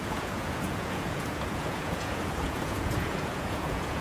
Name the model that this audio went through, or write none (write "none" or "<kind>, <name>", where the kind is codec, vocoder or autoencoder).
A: vocoder, Vocos